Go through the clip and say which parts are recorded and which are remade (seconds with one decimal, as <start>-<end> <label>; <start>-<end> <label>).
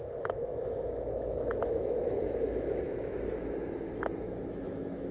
0.0-5.1 remade